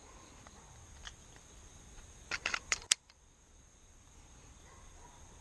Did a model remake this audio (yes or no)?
yes